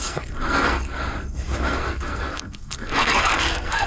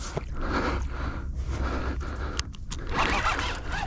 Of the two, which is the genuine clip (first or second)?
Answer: second